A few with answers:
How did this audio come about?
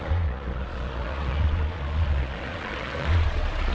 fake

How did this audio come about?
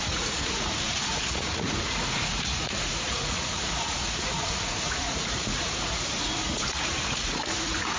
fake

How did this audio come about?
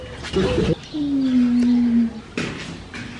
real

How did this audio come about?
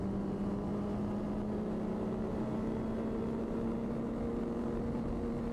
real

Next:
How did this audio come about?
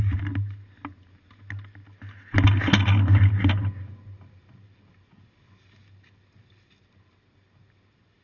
real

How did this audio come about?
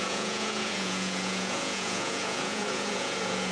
fake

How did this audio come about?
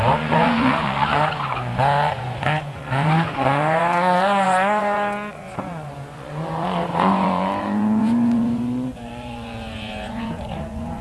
fake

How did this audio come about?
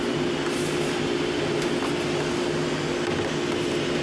real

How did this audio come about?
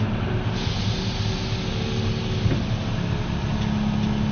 real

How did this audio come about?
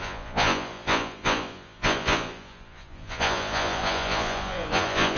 fake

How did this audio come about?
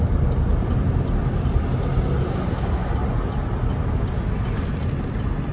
real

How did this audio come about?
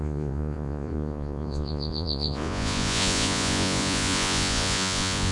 fake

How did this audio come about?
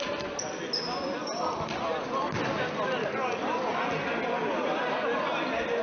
real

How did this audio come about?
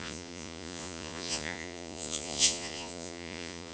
fake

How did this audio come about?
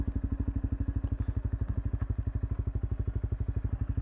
real